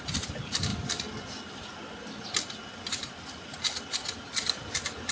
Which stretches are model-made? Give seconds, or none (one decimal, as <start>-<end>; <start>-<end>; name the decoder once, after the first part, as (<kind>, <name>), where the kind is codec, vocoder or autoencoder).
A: none